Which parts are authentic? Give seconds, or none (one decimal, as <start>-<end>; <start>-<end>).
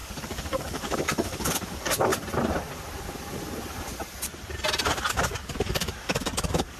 2.1-5.1